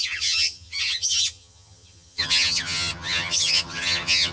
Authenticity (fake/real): fake